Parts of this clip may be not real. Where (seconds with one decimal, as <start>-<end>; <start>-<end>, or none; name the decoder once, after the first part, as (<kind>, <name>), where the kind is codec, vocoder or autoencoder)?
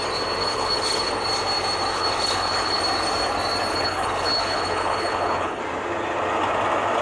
0.4-1.1 (codec, HILCodec); 1.9-2.8; 3.7-5.6